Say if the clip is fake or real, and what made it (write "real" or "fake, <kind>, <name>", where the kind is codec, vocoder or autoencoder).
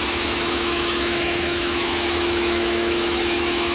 fake, autoencoder, DAC-VAE